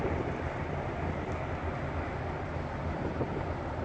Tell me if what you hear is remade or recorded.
recorded